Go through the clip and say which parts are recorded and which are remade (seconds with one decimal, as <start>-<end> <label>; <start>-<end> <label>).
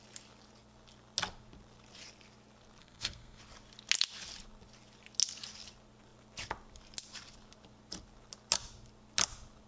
0.0-2.8 recorded; 2.8-3.4 remade; 3.4-9.7 recorded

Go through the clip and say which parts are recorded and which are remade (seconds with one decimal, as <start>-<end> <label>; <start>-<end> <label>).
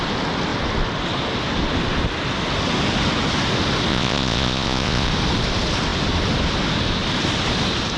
0.0-3.9 recorded; 3.9-5.1 remade; 5.1-8.0 recorded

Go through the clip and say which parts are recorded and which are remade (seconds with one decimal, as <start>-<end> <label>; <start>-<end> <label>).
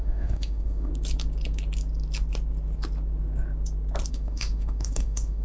0.0-0.9 remade; 0.9-4.1 recorded; 4.1-5.4 remade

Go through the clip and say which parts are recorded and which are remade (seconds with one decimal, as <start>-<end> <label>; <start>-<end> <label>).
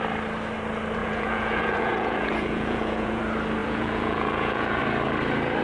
0.0-1.0 recorded; 1.0-3.2 remade; 3.2-3.6 recorded; 3.6-4.8 remade; 4.8-5.6 recorded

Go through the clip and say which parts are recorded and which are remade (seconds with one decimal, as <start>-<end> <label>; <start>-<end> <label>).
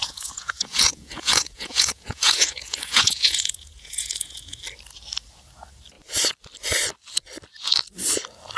0.0-4.6 remade; 4.6-8.6 recorded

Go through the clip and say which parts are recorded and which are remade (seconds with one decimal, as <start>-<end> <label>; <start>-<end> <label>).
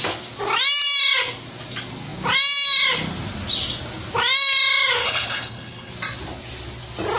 0.0-5.0 recorded; 5.0-5.9 remade; 5.9-7.2 recorded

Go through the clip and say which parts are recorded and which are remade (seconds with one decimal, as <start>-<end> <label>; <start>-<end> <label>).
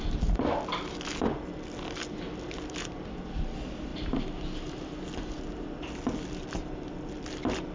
0.0-7.7 recorded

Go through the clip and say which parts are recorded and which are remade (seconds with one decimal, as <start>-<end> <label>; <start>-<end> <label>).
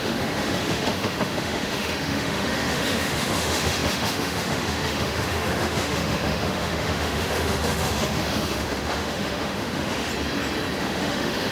0.0-10.1 remade; 10.1-10.8 recorded; 10.8-11.5 remade